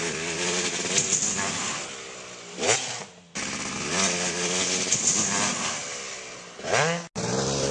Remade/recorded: recorded